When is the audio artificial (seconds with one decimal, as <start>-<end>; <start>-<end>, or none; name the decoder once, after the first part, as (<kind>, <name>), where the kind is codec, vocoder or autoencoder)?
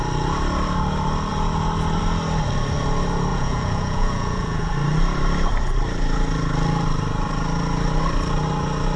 3.3-4.7 (vocoder, Vocos)